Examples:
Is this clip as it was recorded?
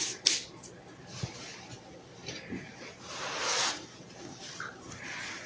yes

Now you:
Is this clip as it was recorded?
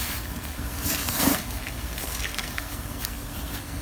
no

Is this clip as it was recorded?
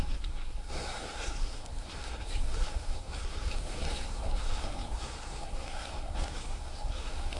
no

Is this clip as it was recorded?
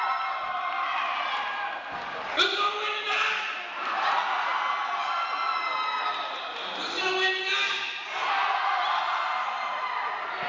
yes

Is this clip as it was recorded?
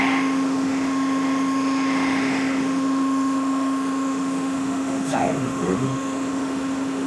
no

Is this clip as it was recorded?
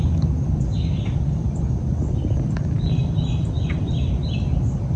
yes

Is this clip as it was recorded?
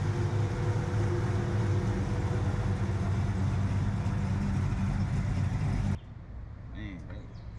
yes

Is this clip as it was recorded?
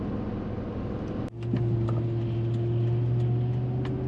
yes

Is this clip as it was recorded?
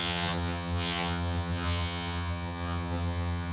no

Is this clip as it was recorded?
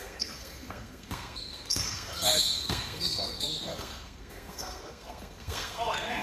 no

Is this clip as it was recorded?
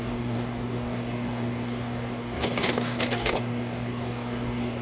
no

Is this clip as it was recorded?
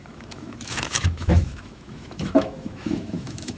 no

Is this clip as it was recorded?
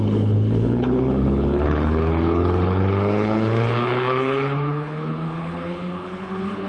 no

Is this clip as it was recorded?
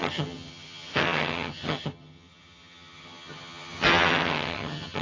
no